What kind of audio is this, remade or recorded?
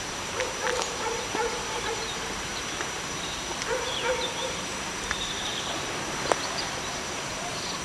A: remade